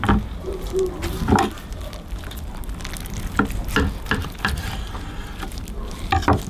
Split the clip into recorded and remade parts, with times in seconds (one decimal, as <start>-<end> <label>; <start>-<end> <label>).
0.0-6.5 recorded